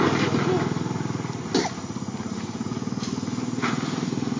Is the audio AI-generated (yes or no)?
no